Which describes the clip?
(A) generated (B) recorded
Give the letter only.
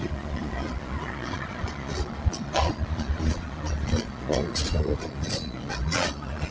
A